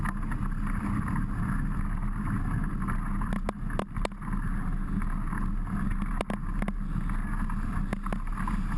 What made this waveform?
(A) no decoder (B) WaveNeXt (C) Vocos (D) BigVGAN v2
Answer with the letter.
A